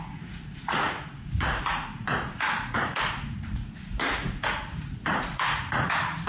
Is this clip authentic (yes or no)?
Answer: no